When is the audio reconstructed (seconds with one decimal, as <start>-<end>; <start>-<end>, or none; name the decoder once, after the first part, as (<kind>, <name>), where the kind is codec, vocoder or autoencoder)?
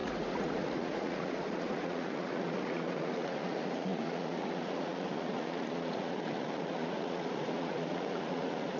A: 0.0-8.8 (vocoder, Vocos)